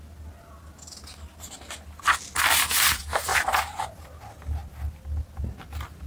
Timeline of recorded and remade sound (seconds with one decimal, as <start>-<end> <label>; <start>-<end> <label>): 0.0-3.3 recorded; 3.3-3.8 remade; 3.8-6.1 recorded